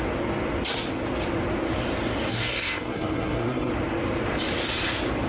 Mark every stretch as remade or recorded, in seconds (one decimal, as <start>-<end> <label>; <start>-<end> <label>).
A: 0.0-2.3 recorded; 2.3-3.7 remade; 3.7-5.3 recorded